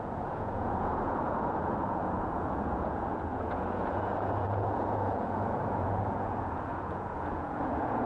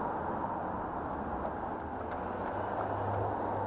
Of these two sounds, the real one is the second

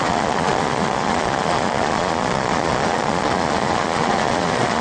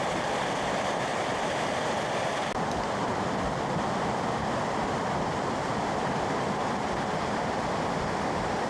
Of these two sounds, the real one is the second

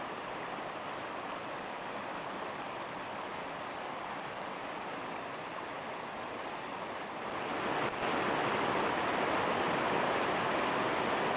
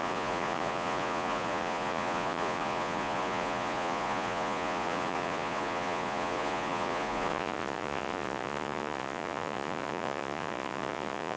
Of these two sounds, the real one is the first